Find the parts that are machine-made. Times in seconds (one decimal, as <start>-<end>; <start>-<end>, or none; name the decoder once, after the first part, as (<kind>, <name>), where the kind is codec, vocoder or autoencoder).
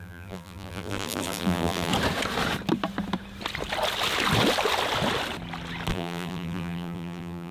0.0-1.9 (vocoder, BigVGAN v2); 5.9-7.5